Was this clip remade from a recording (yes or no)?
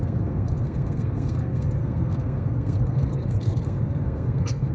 yes